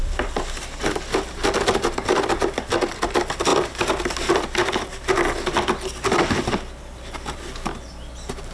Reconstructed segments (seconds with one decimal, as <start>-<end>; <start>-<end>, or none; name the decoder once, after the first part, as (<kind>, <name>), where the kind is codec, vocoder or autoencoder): 1.4-2.3 (vocoder, BigVGAN v2); 3.5-4.3